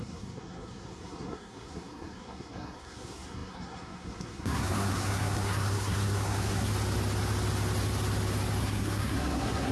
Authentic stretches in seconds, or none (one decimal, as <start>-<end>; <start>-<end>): 6.7-8.6